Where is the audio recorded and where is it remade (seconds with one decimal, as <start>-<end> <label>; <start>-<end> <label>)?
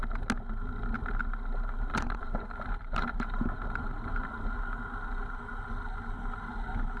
0.0-1.9 recorded; 1.9-4.2 remade; 4.2-7.0 recorded